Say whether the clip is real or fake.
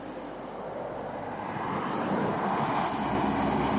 real